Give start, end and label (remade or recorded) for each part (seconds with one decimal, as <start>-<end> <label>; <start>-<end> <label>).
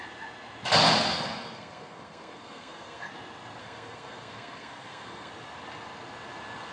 0.0-1.1 recorded; 1.1-3.1 remade; 3.1-3.6 recorded; 3.6-5.3 remade; 5.3-6.7 recorded